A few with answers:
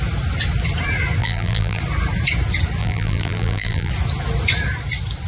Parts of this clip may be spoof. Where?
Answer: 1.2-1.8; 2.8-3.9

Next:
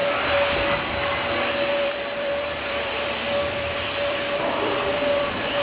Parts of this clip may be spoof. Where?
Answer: 1.7-5.6

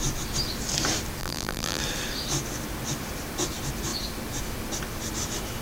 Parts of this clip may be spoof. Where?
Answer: 1.2-1.8